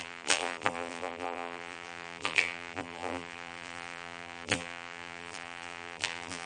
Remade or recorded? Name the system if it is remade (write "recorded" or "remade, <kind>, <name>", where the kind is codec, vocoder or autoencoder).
remade, vocoder, BigVGAN v2